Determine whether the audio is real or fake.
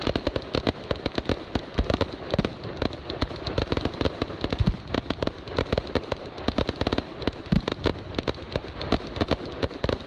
real